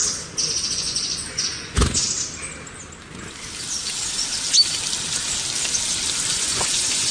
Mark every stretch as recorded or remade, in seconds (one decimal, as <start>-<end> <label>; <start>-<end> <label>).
0.0-0.5 recorded; 0.5-2.0 remade; 2.0-6.3 recorded; 6.3-7.1 remade